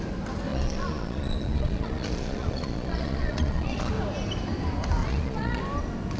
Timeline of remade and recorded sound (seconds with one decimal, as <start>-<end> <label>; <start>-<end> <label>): 0.0-0.5 recorded; 0.5-3.9 remade; 3.9-5.0 recorded; 5.0-5.6 remade; 5.6-6.2 recorded

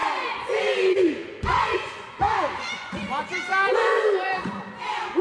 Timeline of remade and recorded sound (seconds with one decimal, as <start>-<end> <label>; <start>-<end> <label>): 0.0-3.1 remade; 3.1-3.5 recorded; 3.5-4.6 remade; 4.6-5.2 recorded

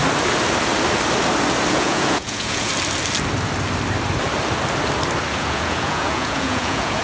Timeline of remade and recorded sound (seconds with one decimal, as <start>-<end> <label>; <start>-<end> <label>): 0.0-1.7 recorded; 1.7-2.7 remade; 2.7-5.3 recorded; 5.3-7.0 remade